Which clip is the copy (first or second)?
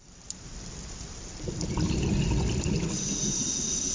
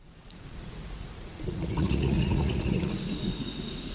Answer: second